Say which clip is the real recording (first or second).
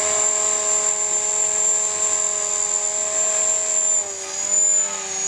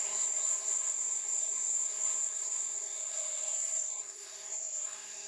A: first